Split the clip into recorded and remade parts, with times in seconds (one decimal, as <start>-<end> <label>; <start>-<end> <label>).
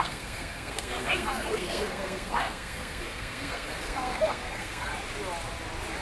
0.0-4.9 remade; 4.9-6.0 recorded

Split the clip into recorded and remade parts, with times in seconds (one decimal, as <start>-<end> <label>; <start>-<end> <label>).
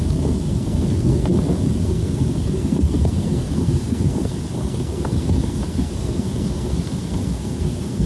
0.0-8.1 remade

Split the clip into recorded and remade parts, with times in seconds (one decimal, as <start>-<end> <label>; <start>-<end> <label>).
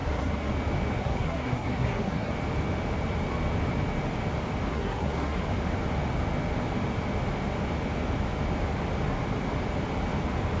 0.0-0.5 remade; 0.5-1.0 recorded; 1.0-2.3 remade; 2.3-4.7 recorded; 4.7-5.4 remade; 5.4-10.6 recorded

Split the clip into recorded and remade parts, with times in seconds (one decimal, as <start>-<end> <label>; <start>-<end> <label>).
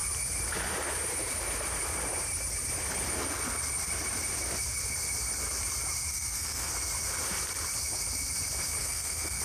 0.0-6.1 recorded; 6.1-6.7 remade; 6.7-8.8 recorded; 8.8-9.4 remade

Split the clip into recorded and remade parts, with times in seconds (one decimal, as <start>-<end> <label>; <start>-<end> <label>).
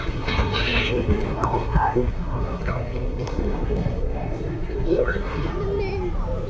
0.0-5.5 remade; 5.5-6.5 recorded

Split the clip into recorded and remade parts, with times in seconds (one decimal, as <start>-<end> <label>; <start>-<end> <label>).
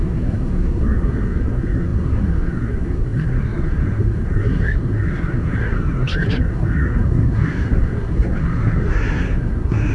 0.0-9.9 remade